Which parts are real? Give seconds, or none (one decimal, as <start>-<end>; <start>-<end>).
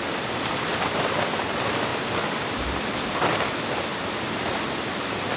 0.0-5.4